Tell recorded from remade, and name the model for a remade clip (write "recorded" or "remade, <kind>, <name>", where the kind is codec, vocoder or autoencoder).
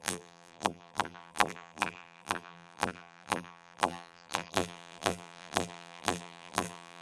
remade, vocoder, BigVGAN v2